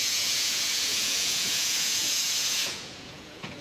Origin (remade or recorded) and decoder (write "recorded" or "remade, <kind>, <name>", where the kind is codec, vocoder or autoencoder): remade, vocoder, Vocos